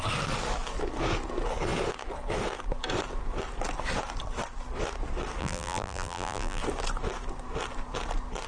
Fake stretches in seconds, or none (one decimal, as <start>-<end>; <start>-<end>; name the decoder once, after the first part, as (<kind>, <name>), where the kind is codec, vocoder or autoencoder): 5.4-6.6 (vocoder, BigVGAN v2)